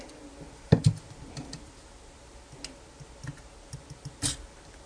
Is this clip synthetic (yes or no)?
no